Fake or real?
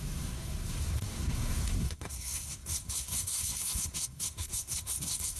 fake